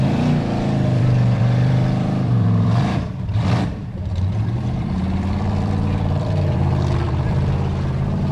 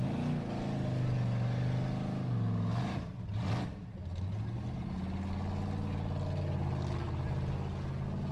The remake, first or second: first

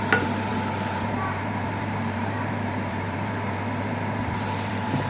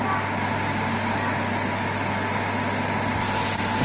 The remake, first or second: first